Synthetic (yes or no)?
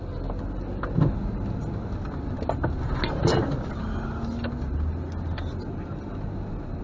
no